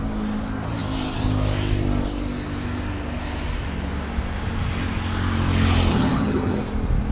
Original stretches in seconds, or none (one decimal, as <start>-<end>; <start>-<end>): 0.0-5.9; 6.6-7.1

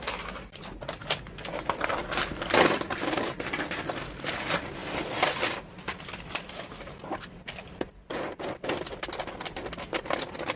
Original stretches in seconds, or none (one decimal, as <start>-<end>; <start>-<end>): 0.0-10.6

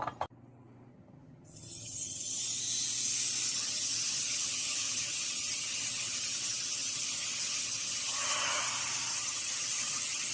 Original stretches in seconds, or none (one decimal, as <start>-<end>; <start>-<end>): 0.0-0.9; 2.4-3.5; 8.6-9.1